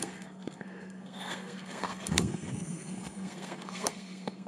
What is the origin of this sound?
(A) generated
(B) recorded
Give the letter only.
A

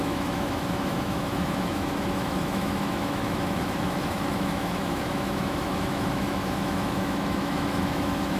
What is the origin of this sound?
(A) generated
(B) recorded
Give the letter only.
A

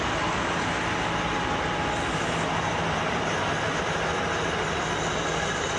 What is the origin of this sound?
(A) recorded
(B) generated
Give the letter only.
A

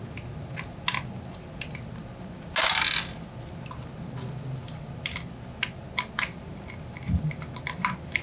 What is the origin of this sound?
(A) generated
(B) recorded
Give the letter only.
B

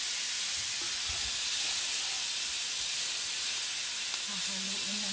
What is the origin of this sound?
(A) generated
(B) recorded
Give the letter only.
B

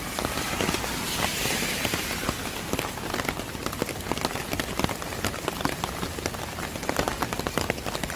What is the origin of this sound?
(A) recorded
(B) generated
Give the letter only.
A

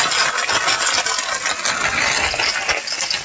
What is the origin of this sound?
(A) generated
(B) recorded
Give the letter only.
B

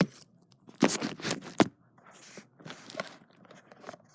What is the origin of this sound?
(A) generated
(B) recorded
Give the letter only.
A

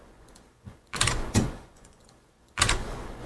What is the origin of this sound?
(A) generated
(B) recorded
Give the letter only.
A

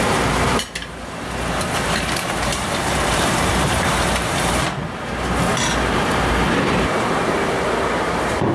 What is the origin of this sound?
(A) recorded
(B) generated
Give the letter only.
B